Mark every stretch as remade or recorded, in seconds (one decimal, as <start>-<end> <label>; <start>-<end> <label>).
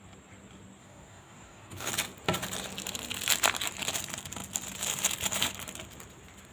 0.0-0.8 recorded; 0.8-1.9 remade; 1.9-6.5 recorded